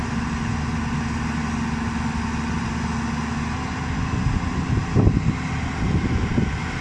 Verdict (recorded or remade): recorded